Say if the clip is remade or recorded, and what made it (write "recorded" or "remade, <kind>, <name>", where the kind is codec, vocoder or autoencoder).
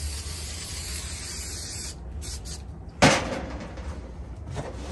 recorded